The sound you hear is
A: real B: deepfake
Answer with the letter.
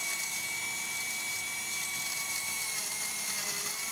B